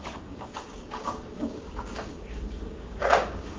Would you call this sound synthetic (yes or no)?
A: yes